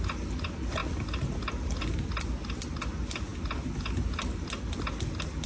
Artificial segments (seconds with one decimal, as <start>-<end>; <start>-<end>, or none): none